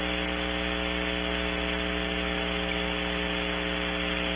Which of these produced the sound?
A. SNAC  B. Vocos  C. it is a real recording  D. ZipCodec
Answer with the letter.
C